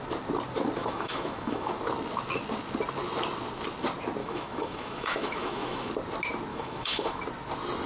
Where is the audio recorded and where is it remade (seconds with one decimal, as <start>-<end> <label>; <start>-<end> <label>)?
0.0-0.8 recorded; 0.8-1.7 remade; 1.7-4.2 recorded; 4.2-5.9 remade; 5.9-6.5 recorded; 6.5-7.2 remade; 7.2-7.9 recorded